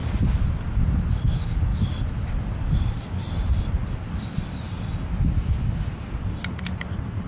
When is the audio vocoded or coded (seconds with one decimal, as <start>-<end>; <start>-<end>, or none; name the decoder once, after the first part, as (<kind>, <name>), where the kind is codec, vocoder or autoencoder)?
none